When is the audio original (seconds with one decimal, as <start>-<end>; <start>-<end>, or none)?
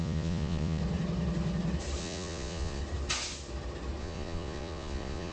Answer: 0.8-2.0; 2.8-4.0